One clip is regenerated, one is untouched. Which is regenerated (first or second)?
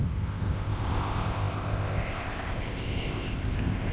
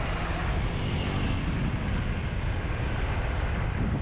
first